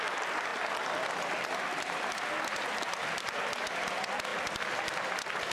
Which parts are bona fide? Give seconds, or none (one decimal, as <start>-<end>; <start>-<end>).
0.0-5.5

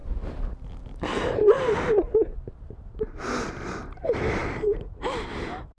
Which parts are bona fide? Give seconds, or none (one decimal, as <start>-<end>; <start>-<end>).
0.0-5.8